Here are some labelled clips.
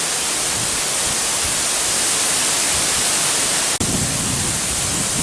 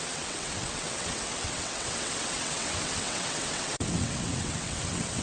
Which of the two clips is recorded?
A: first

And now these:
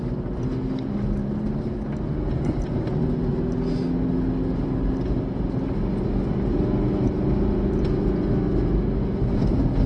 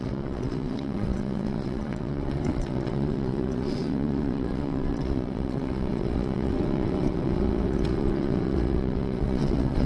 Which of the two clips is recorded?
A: first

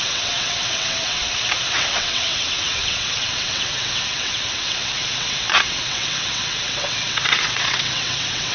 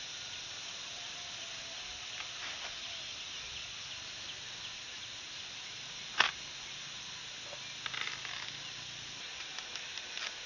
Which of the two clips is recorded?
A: second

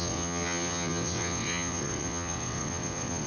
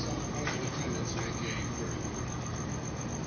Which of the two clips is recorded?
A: second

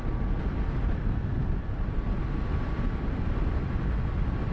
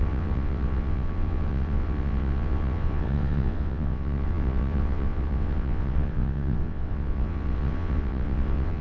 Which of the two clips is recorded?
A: first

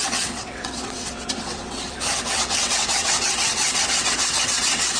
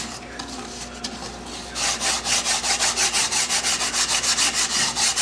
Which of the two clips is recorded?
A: second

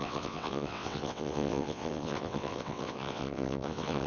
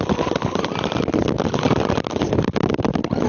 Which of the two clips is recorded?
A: second